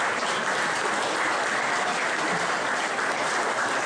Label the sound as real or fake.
real